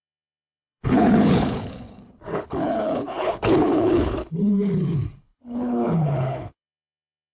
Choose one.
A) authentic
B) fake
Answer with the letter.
B